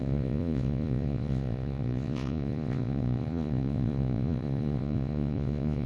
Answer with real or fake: fake